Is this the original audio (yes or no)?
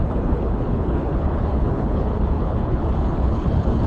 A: no